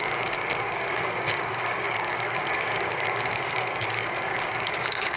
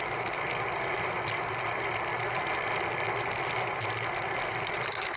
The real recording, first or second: second